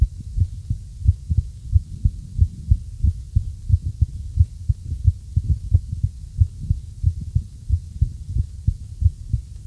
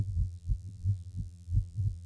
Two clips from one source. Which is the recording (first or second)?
first